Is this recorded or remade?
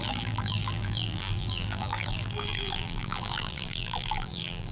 remade